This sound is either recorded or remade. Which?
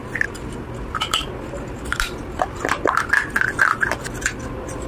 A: remade